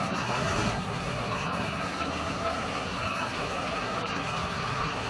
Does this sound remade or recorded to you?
remade